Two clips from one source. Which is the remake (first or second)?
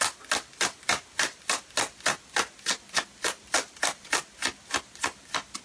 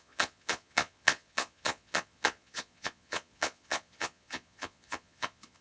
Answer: second